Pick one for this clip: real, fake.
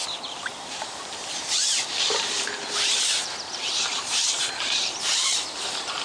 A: fake